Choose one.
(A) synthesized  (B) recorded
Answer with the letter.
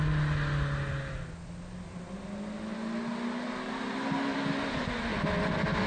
B